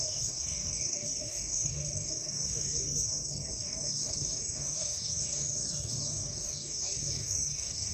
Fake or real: fake